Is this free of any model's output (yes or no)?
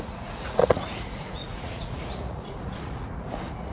no